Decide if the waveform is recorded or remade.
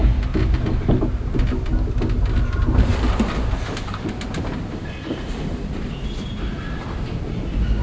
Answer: recorded